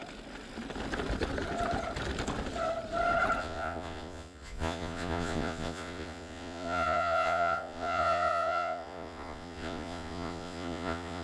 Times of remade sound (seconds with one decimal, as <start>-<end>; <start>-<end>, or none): 3.4-11.2